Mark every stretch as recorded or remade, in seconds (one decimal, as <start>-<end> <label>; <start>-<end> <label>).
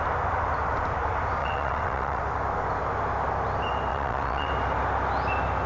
0.0-1.4 recorded; 1.4-2.2 remade; 2.2-3.9 recorded; 3.9-4.5 remade; 4.5-5.7 recorded